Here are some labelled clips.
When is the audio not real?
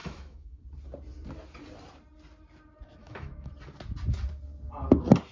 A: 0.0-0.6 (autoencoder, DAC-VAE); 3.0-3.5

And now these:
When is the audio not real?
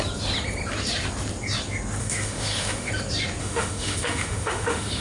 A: 2.0-2.9 (autoencoder, DAC-VAE); 3.4-5.0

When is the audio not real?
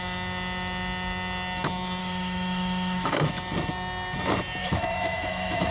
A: 2.0-3.3 (autoencoder, DAC-VAE); 4.6-5.7